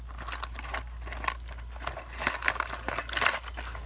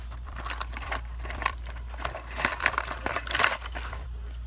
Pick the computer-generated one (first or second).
second